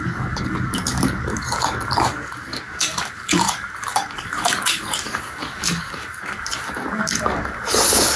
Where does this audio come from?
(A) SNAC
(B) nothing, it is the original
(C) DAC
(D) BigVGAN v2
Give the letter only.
C